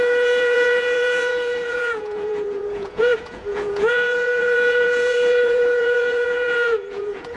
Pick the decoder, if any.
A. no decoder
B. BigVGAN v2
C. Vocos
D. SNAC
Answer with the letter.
C